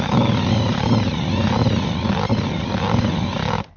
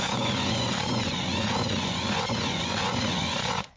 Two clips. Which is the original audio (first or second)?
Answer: first